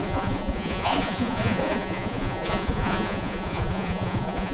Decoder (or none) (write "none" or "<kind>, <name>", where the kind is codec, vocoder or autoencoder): vocoder, Vocos